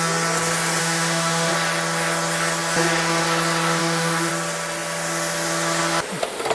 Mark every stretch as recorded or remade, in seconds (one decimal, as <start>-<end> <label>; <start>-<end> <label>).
0.0-0.8 recorded; 0.8-1.5 remade; 1.5-3.8 recorded; 3.8-4.3 remade; 4.3-6.5 recorded